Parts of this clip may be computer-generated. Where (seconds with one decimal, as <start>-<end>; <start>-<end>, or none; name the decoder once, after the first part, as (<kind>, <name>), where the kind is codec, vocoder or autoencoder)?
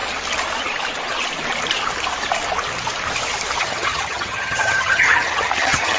3.6-6.0 (vocoder, HiFi-GAN)